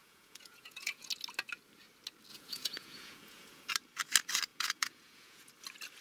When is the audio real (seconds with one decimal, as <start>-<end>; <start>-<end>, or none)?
1.1-2.3; 3.7-4.5; 5.5-6.0